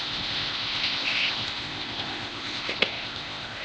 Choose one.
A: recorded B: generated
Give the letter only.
B